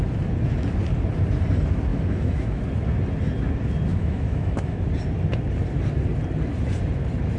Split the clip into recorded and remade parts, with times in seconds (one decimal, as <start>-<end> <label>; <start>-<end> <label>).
0.0-1.9 recorded; 1.9-2.6 remade; 2.6-3.9 recorded; 3.9-4.8 remade; 4.8-7.4 recorded

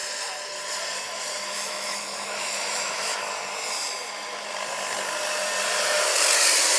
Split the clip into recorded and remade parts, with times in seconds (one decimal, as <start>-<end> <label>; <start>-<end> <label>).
0.0-1.5 recorded; 1.5-3.2 remade; 3.2-6.8 recorded